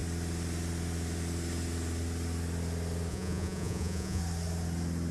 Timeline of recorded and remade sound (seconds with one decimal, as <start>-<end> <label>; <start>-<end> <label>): 0.0-3.1 recorded; 3.1-4.2 remade; 4.2-5.1 recorded

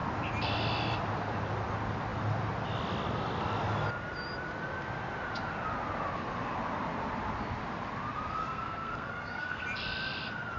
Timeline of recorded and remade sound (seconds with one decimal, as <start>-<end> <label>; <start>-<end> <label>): 0.0-8.4 recorded; 8.4-9.6 remade; 9.6-10.6 recorded

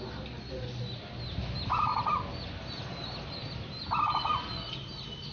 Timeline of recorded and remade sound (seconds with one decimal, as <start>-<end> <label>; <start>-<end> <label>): 0.0-5.3 recorded

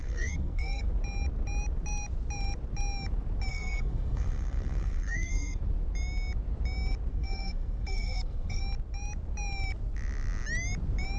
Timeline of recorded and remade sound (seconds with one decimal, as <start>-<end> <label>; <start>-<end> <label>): 0.0-0.9 remade; 0.9-3.5 recorded; 3.5-5.6 remade; 5.6-7.1 recorded; 7.1-8.6 remade; 8.6-11.2 recorded

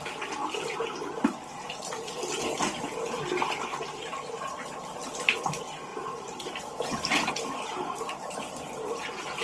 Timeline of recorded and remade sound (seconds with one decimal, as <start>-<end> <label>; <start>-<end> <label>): 0.0-0.4 recorded; 0.4-1.3 remade; 1.3-5.9 recorded; 5.9-7.3 remade; 7.3-9.4 recorded

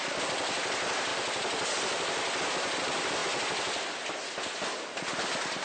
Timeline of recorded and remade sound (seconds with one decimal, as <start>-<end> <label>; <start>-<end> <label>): 0.0-5.6 recorded

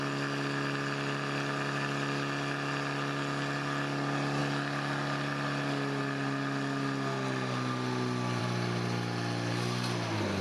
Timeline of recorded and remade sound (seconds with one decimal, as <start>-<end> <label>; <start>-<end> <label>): 0.0-10.4 recorded

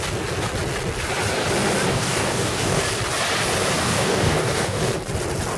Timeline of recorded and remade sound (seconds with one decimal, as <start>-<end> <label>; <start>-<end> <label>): 0.0-1.9 recorded; 1.9-2.8 remade; 2.8-3.8 recorded; 3.8-4.8 remade; 4.8-5.6 recorded